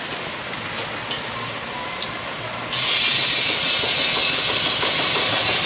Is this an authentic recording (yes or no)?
yes